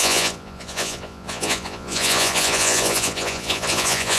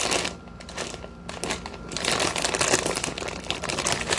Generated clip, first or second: first